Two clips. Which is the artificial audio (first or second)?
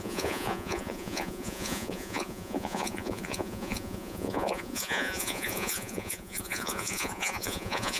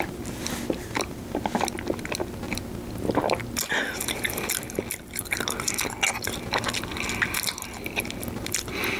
first